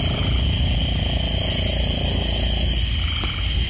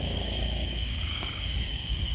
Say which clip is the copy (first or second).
second